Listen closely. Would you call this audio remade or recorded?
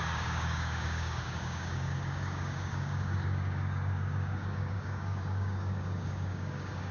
remade